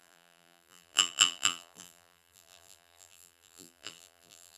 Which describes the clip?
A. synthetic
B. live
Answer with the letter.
A